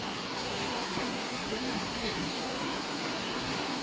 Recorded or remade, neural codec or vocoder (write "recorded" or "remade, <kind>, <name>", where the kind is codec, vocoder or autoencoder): remade, codec, SNAC